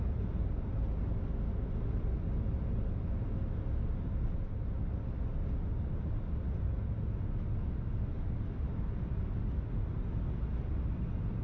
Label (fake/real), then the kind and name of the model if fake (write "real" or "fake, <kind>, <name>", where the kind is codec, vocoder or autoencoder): real